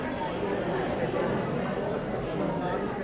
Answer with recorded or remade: recorded